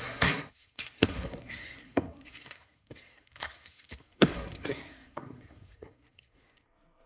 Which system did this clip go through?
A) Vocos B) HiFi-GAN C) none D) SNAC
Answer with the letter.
D